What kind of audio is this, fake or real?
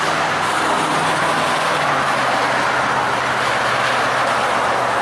real